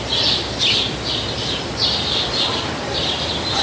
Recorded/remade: recorded